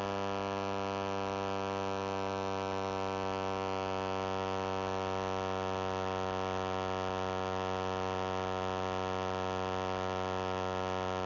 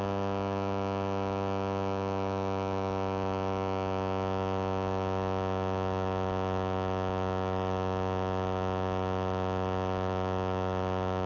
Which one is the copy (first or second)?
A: second